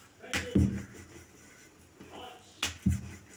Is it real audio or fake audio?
real